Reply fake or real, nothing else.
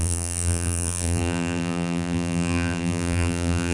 fake